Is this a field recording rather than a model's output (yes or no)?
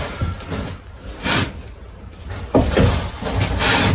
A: yes